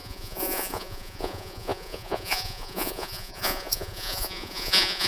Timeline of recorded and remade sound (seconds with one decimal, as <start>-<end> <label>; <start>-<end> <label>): 0.0-5.1 remade